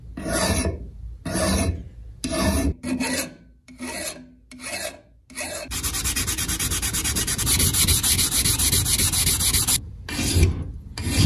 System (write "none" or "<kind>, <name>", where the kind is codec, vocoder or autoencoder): none